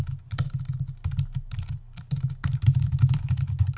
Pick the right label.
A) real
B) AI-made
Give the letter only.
A